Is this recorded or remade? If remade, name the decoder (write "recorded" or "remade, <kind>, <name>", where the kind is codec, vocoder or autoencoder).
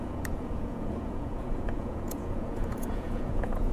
remade, vocoder, Vocos